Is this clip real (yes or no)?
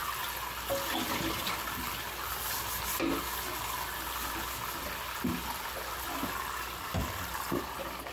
yes